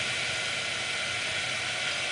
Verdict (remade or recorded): recorded